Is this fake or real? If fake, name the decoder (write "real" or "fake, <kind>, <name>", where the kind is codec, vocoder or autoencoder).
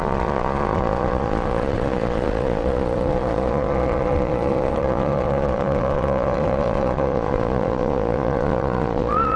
fake, vocoder, Vocos